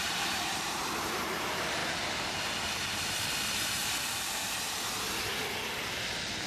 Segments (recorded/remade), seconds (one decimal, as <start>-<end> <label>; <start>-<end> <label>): 0.0-1.8 remade; 1.8-3.2 recorded; 3.2-3.8 remade; 3.8-6.5 recorded